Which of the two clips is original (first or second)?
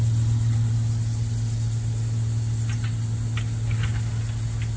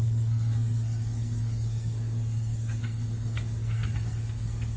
first